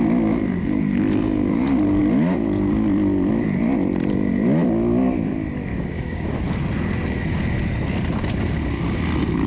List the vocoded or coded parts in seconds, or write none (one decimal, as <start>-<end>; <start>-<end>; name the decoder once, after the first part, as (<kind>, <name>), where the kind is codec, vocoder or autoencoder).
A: 5.7-6.4 (codec, DAC)